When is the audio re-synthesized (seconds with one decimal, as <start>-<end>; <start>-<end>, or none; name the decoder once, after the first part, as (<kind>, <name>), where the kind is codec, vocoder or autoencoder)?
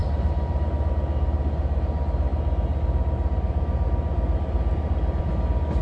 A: 0.0-0.9 (vocoder, BigVGAN v2)